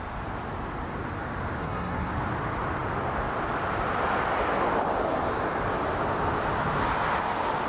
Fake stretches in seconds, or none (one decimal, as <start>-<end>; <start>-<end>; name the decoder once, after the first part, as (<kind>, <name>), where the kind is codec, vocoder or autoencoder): 1.6-2.1 (codec, SNAC)